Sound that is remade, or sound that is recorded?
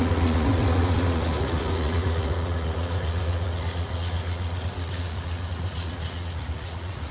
remade